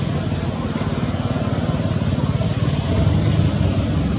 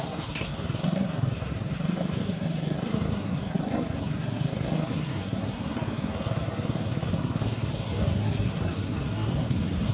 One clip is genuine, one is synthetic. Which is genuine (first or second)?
first